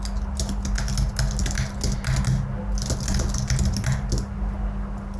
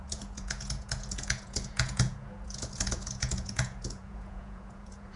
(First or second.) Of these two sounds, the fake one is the second